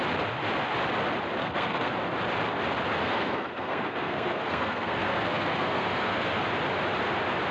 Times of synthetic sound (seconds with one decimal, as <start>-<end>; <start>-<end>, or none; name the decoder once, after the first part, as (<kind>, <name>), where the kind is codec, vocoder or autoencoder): 1.4-1.9 (codec, SNAC); 3.0-6.4